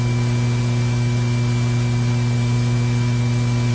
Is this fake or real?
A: real